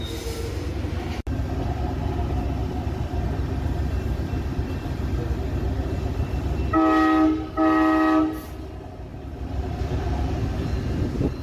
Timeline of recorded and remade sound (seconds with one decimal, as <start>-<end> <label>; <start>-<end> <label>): 0.0-2.6 recorded; 2.6-3.2 remade; 3.2-9.1 recorded; 9.1-10.0 remade; 10.0-11.4 recorded